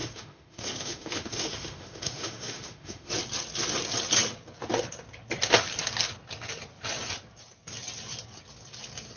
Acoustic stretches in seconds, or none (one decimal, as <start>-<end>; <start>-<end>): 3.1-9.2